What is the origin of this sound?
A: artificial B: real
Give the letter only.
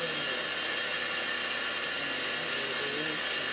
B